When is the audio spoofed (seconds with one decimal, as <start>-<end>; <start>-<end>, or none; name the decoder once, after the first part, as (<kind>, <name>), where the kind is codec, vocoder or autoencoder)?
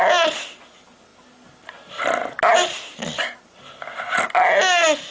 none